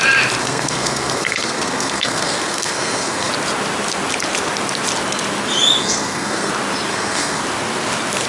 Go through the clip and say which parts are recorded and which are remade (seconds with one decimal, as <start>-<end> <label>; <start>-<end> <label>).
0.0-0.4 recorded; 0.4-3.3 remade; 3.3-5.8 recorded; 5.8-6.5 remade; 6.5-6.9 recorded; 6.9-7.4 remade; 7.4-8.3 recorded